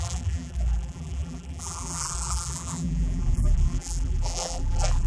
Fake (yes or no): yes